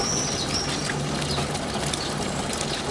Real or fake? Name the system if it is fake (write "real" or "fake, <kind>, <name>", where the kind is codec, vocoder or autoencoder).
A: real